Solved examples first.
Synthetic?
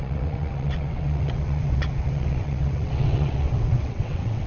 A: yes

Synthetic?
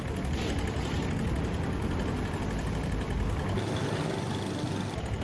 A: no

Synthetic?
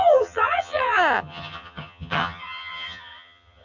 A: yes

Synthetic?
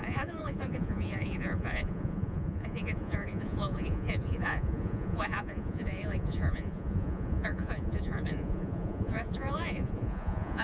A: yes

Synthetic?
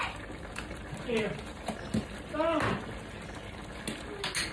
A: no